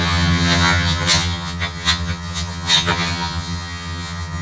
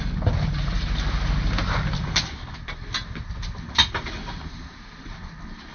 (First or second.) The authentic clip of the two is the second